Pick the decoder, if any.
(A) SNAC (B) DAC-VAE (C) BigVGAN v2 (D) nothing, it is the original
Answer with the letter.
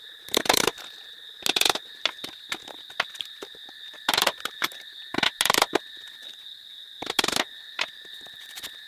D